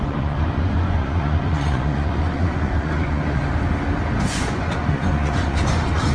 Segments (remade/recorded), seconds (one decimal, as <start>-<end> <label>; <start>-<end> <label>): 0.0-3.4 remade; 3.4-4.2 recorded; 4.2-6.1 remade